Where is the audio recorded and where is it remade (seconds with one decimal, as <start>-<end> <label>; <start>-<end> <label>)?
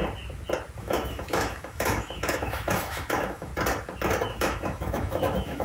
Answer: 0.0-0.8 recorded; 0.8-3.5 remade; 3.5-4.3 recorded; 4.3-5.6 remade